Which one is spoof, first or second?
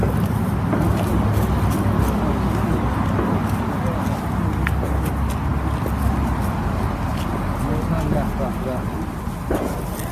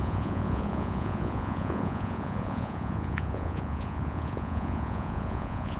second